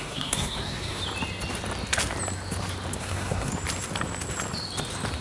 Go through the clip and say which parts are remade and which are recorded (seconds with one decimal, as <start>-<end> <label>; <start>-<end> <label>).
0.0-1.0 remade; 1.0-3.0 recorded; 3.0-3.5 remade; 3.5-5.2 recorded